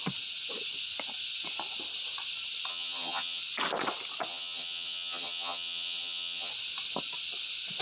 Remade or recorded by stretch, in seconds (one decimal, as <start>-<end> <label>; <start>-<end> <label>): 0.0-2.7 recorded; 2.7-3.4 remade; 3.4-4.3 recorded; 4.3-6.5 remade; 6.5-7.8 recorded